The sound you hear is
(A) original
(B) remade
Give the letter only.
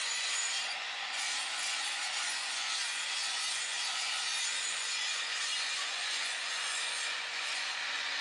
B